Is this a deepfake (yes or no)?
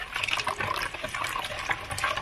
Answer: yes